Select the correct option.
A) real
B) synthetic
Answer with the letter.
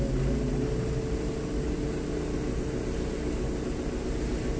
A